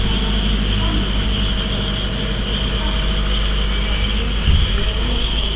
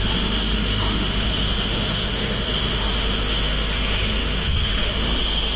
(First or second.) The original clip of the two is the first